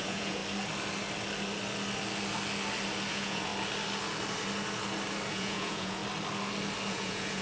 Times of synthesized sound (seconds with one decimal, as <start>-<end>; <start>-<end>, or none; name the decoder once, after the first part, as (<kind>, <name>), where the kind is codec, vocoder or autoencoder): 0.0-0.4 (vocoder, Vocos); 3.1-3.5; 5.3-6.0; 6.9-7.4